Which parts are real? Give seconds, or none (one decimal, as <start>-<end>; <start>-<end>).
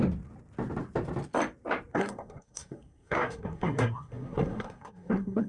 0.0-1.9